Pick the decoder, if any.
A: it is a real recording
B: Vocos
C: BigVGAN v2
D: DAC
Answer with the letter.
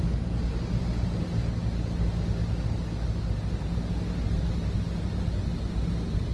A